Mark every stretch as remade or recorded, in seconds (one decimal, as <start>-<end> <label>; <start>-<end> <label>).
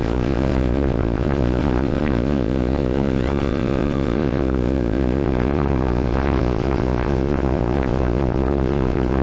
0.0-9.2 remade